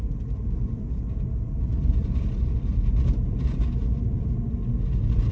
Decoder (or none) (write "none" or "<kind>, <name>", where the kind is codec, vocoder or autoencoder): none